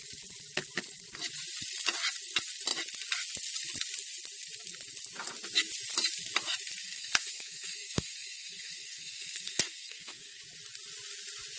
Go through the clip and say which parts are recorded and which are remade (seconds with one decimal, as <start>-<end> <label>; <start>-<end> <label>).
0.0-6.8 recorded; 6.8-10.4 remade; 10.4-11.6 recorded